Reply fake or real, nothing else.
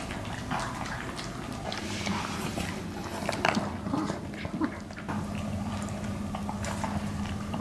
real